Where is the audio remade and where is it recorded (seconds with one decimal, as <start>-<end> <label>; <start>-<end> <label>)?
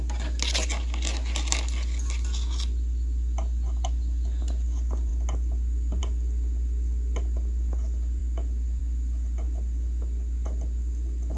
0.0-11.4 recorded